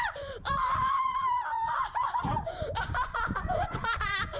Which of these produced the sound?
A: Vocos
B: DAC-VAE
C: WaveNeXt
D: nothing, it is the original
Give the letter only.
A